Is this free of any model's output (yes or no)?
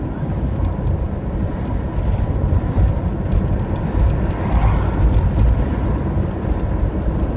yes